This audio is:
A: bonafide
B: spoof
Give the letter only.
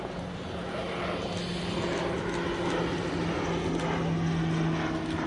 A